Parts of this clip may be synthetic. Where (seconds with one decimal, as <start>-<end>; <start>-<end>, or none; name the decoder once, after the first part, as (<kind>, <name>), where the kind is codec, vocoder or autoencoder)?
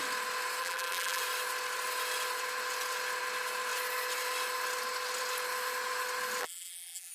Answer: 0.6-1.2 (vocoder, BigVGAN v2); 6.4-7.1